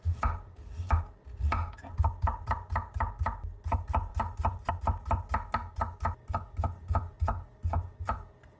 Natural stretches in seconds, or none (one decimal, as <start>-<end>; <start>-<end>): 0.0-8.6